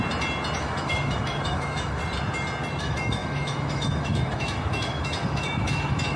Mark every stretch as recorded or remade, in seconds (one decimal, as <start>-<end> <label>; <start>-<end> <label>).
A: 0.0-0.6 recorded; 0.6-2.0 remade; 2.0-2.8 recorded; 2.8-6.2 remade